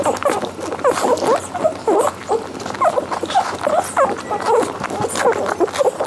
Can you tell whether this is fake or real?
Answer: real